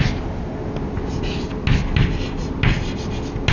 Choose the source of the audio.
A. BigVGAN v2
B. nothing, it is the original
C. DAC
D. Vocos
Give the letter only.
B